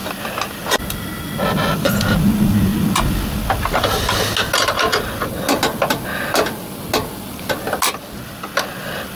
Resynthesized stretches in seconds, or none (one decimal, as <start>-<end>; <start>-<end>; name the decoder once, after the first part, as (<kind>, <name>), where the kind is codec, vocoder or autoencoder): none